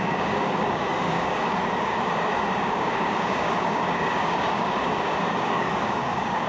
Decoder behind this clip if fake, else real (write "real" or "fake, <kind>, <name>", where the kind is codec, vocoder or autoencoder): fake, codec, DAC